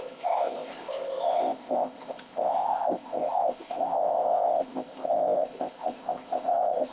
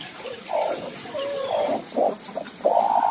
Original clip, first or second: second